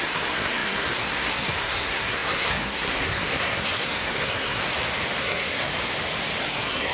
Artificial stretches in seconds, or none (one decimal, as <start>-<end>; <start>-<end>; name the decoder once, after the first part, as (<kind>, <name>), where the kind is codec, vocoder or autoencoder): 0.0-4.6 (codec, SNAC); 5.2-5.7; 6.4-6.9